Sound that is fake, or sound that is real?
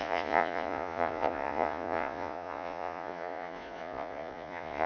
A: fake